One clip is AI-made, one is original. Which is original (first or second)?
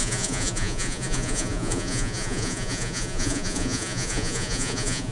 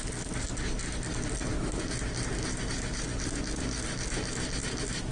second